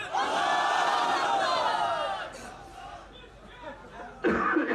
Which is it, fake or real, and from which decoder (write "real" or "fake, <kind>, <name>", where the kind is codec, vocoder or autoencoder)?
real